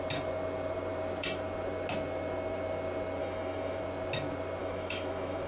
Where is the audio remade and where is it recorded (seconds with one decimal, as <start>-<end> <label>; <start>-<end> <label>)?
0.0-3.2 recorded; 3.2-3.8 remade; 3.8-4.6 recorded; 4.6-5.5 remade